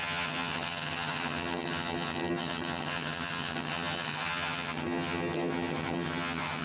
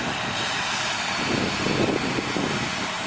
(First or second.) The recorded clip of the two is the second